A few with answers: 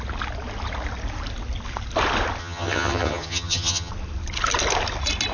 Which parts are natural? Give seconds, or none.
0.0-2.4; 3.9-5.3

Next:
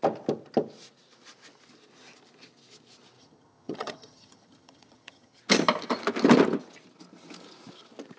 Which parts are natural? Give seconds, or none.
0.0-3.2; 5.4-8.2